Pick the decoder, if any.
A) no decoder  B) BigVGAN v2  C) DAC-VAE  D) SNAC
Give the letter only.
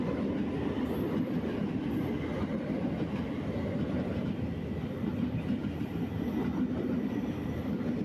A